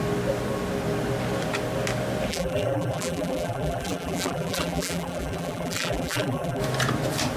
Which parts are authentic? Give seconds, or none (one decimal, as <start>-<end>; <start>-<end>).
0.0-2.3; 6.6-7.4

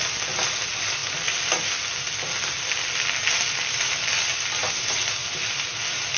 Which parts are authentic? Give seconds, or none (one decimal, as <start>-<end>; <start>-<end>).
0.0-6.2

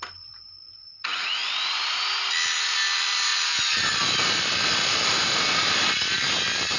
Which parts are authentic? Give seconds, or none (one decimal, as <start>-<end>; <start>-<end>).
1.4-5.5